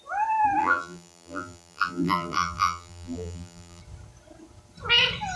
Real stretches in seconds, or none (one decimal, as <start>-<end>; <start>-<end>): 0.0-0.6; 3.8-5.4